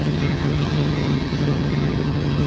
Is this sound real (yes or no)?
no